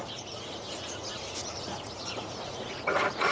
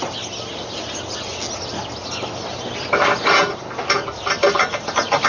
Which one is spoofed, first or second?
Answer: first